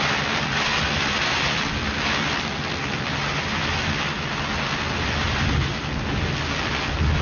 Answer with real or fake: real